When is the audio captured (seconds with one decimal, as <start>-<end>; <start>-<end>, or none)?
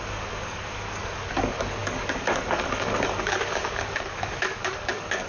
none